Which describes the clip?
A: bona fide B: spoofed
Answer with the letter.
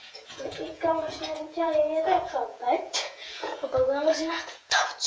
B